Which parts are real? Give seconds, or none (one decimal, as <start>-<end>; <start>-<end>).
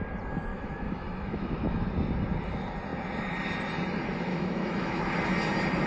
0.0-0.5; 1.9-4.3; 5.0-5.9